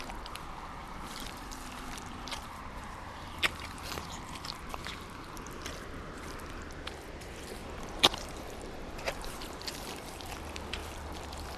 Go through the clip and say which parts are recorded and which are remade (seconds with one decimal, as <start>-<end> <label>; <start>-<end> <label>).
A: 0.0-0.8 recorded; 0.8-5.5 remade; 5.5-7.6 recorded; 7.6-10.3 remade; 10.3-10.8 recorded; 10.8-11.6 remade